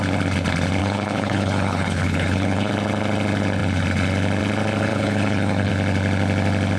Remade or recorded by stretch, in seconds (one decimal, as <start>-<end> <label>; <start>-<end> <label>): 0.0-0.8 recorded; 0.8-2.7 remade; 2.7-4.9 recorded; 4.9-5.7 remade; 5.7-6.8 recorded